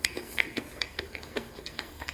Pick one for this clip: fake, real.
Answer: fake